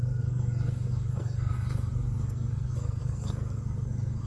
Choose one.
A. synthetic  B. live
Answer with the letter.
A